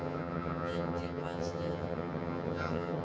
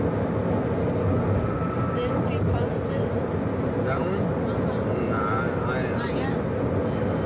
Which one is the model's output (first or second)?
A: first